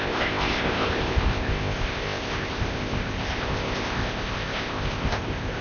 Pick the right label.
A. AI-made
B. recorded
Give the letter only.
A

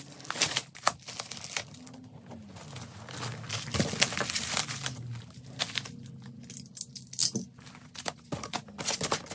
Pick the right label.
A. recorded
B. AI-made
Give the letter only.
A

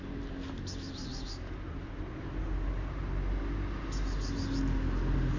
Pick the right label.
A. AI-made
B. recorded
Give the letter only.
B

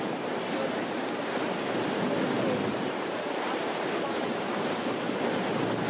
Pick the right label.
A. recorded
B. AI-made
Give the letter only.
A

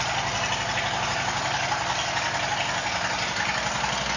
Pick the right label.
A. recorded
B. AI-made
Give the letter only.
A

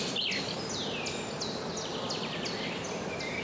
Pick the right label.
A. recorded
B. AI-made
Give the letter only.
A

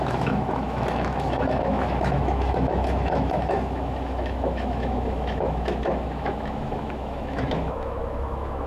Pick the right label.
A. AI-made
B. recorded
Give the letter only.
A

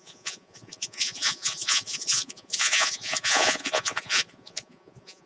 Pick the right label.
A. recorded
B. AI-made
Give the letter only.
B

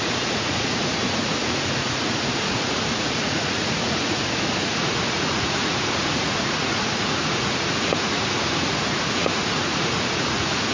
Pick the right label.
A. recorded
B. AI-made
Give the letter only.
B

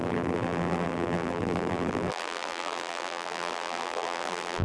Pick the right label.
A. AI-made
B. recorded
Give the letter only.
A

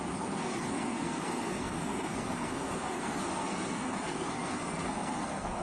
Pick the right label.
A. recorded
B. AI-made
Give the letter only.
B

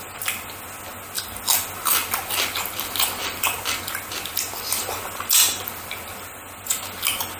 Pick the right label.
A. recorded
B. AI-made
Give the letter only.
A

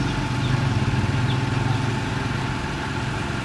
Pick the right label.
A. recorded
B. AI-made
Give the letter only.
A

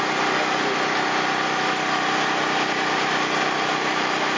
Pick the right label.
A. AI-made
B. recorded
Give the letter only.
B